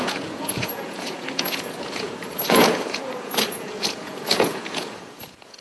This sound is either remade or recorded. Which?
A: remade